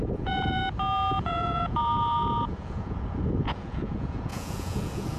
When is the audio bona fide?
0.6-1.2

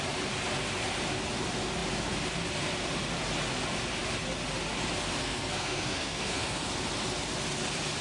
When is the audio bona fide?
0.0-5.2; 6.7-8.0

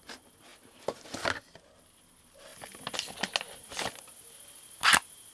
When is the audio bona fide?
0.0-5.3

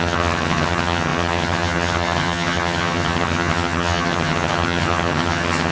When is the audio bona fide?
none

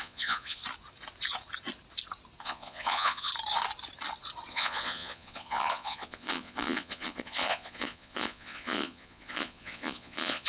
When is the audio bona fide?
0.6-2.4; 3.3-4.5

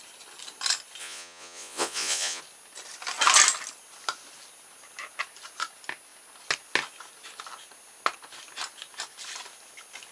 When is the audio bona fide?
0.0-1.0; 2.4-10.1

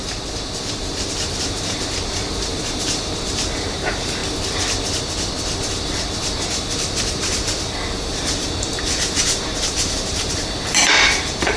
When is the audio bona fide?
0.0-0.6; 4.2-7.1